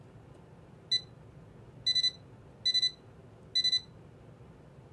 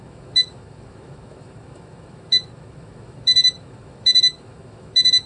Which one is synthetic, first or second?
second